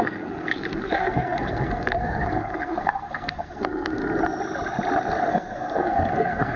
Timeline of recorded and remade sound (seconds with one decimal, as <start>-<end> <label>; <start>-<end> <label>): 0.0-4.0 remade; 4.0-5.3 recorded; 5.3-6.6 remade